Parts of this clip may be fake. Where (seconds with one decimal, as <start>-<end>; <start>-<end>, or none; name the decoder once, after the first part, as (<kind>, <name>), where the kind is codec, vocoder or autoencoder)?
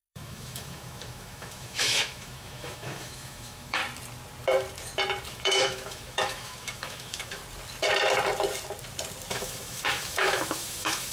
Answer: 0.0-3.8 (autoencoder, DAC-VAE); 5.3-7.4; 9.3-11.1